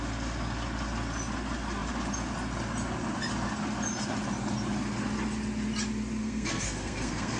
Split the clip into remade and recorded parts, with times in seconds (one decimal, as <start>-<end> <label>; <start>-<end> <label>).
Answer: 0.0-6.2 recorded; 6.2-7.4 remade